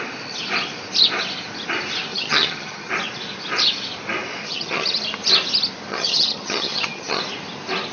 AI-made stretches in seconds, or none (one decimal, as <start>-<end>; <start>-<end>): 2.1-2.9; 4.4-5.0; 5.9-7.2